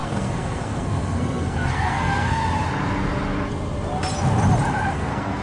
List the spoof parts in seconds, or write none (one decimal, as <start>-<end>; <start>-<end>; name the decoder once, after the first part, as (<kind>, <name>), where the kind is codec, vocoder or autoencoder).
0.0-2.4 (codec, SNAC); 4.9-5.4